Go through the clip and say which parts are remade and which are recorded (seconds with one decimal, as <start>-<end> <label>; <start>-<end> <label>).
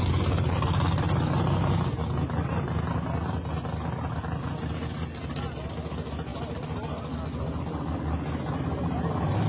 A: 0.0-9.5 recorded